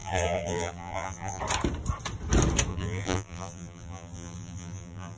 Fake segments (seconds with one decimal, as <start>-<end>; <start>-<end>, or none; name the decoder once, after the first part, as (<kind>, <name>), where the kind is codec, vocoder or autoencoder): 0.0-1.4 (vocoder, BigVGAN v2); 2.7-5.2